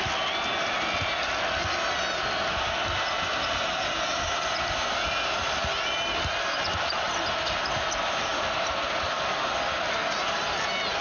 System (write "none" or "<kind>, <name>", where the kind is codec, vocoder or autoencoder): none